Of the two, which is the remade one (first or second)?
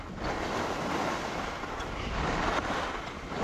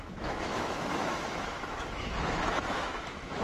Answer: second